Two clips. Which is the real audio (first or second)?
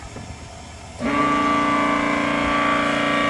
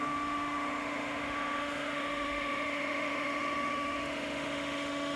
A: first